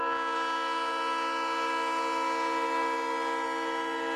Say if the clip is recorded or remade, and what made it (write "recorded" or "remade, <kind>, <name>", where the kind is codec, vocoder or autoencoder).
recorded